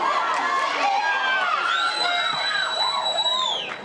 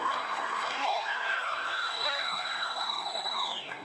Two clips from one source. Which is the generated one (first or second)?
second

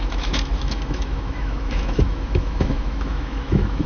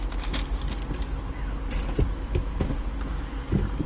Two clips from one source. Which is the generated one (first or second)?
first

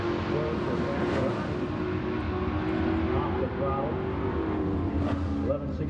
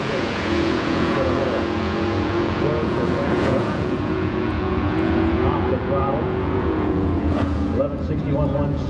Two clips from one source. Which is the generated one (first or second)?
second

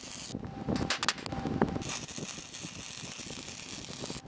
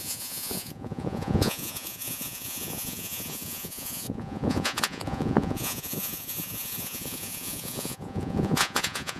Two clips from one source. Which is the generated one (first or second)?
second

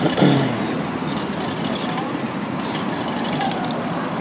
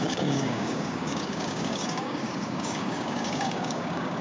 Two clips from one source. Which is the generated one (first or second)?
second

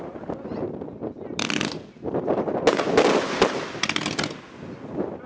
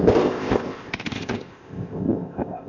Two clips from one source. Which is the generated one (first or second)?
second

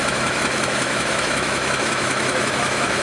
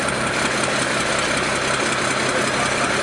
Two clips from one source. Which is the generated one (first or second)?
first